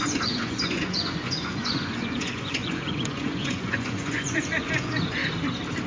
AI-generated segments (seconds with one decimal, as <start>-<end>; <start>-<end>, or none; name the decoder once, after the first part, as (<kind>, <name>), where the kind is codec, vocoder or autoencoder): 0.0-5.2 (vocoder, Vocos)